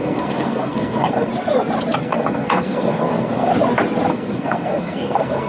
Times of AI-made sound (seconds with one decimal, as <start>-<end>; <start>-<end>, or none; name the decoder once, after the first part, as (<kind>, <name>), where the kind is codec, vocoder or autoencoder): 0.0-1.3 (codec, SNAC); 2.0-3.5; 4.1-5.5